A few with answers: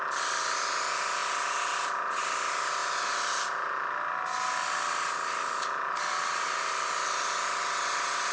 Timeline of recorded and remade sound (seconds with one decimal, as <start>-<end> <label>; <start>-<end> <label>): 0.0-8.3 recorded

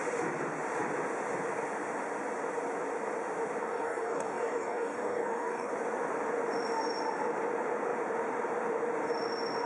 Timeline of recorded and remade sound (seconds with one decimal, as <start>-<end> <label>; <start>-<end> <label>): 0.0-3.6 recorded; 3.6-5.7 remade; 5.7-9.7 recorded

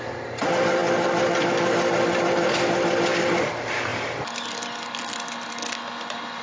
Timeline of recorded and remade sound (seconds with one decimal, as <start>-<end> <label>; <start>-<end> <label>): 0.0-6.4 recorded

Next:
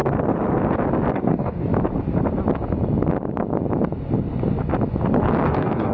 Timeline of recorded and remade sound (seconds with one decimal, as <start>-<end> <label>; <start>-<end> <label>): 0.0-1.1 recorded; 1.1-1.7 remade; 1.7-5.2 recorded; 5.2-5.9 remade

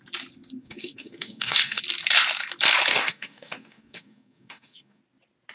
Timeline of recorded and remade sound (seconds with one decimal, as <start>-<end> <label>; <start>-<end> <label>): 0.0-0.6 recorded; 0.6-1.8 remade; 1.8-2.9 recorded; 2.9-5.0 remade; 5.0-5.5 recorded

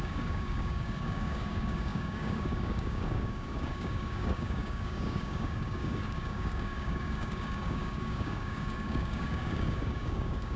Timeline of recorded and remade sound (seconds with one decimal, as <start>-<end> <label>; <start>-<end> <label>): 0.0-10.6 remade